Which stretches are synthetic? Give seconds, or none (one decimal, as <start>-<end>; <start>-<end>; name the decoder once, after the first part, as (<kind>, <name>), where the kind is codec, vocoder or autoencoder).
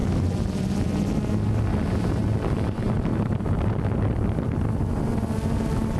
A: none